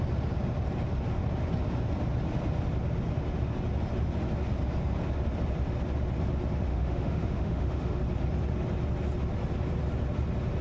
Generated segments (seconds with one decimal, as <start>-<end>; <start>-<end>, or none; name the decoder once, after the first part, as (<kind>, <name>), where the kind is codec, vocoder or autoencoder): 6.7-8.0 (autoencoder, DAC-VAE)